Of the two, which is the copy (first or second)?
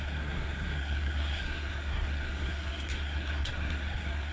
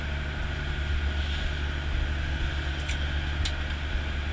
first